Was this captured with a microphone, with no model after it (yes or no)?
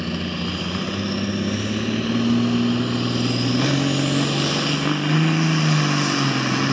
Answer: yes